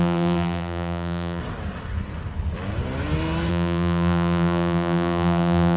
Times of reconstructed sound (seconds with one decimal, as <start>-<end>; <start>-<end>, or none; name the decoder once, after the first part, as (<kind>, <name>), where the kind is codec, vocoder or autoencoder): 0.0-1.4 (vocoder, BigVGAN v2); 3.5-5.8